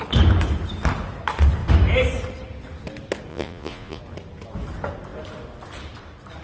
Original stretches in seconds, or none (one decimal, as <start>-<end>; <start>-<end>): 0.0-3.3; 4.0-6.4

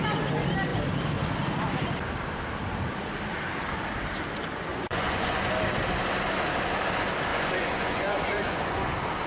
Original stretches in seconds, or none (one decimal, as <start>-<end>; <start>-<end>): 0.0-4.7; 5.5-7.3; 8.9-9.3

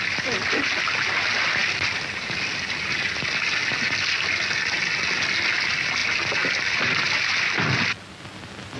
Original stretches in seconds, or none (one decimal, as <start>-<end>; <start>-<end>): 0.0-8.8

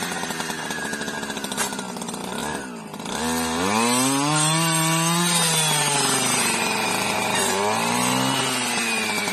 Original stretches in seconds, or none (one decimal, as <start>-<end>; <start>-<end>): 0.0-9.3

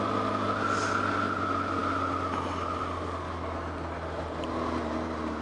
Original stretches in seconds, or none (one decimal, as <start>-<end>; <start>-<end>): 0.0-5.4

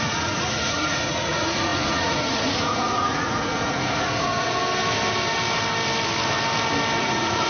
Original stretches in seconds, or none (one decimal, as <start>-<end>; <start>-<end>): 4.6-7.0

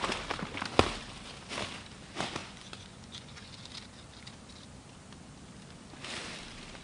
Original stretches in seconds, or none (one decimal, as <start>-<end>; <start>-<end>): 0.0-2.4; 3.6-6.8

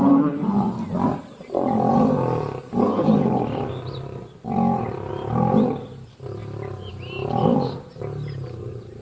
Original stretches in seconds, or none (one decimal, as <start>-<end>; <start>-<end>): 0.0-9.0